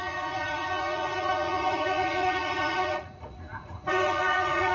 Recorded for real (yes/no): no